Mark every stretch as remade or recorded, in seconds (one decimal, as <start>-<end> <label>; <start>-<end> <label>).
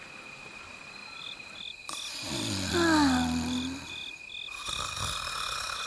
0.0-5.9 recorded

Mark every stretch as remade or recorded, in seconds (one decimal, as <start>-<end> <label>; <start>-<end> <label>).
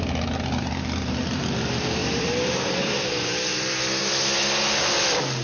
0.0-2.0 recorded; 2.0-4.0 remade; 4.0-5.4 recorded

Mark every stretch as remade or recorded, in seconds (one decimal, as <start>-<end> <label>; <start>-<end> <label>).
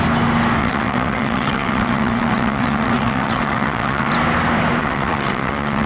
0.0-0.6 recorded; 0.6-4.1 remade; 4.1-4.8 recorded; 4.8-5.9 remade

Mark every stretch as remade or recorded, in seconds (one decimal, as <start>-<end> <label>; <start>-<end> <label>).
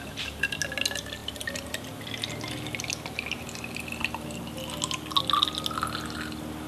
0.0-6.7 recorded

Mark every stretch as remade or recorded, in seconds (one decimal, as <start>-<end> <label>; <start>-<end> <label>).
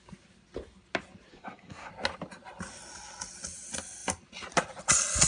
0.0-1.3 recorded; 1.3-1.9 remade; 1.9-5.3 recorded